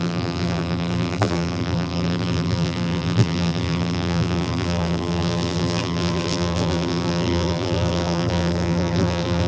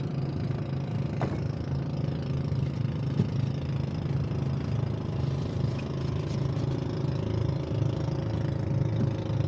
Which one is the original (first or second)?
second